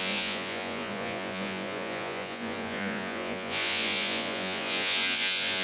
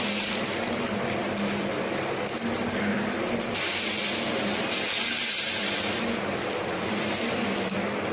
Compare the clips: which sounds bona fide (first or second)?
second